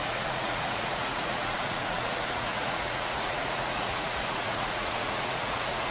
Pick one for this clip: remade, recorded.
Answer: remade